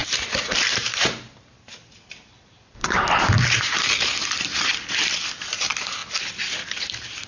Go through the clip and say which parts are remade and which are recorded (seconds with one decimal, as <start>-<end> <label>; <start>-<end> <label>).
0.0-3.9 remade; 3.9-7.3 recorded